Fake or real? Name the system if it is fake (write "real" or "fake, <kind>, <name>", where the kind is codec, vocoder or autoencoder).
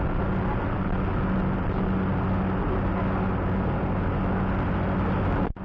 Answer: real